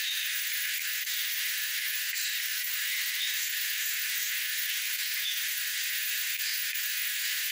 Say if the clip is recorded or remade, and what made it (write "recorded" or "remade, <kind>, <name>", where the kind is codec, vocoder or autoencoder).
remade, autoencoder, DAC-VAE